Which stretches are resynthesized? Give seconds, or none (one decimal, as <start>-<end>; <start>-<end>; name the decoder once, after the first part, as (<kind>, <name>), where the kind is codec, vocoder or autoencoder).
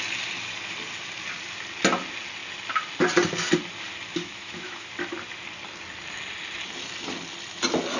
4.2-4.9 (autoencoder, DAC-VAE)